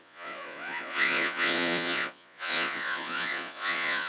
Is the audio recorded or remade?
remade